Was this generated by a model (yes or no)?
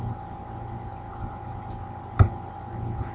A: no